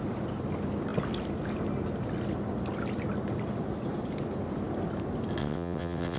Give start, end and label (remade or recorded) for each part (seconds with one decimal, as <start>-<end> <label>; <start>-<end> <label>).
0.0-5.4 recorded; 5.4-6.2 remade